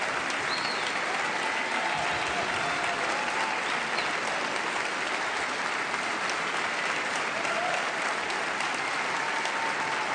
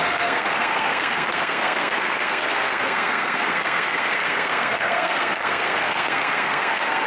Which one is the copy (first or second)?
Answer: second